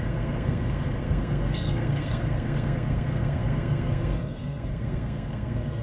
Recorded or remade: remade